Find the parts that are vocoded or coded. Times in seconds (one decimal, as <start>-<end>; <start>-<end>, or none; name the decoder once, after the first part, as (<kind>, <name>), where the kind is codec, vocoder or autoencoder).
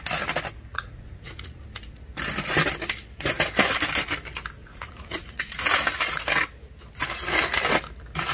0.7-1.6 (vocoder, Vocos); 4.6-5.5